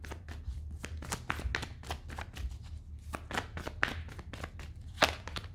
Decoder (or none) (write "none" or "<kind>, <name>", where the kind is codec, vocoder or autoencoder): none